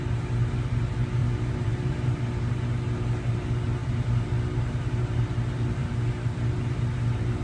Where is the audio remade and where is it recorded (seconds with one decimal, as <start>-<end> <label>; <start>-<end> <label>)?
0.0-1.2 recorded; 1.2-2.2 remade; 2.2-7.4 recorded